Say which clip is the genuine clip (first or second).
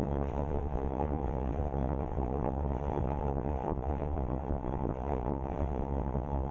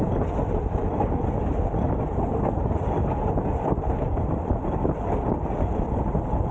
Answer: second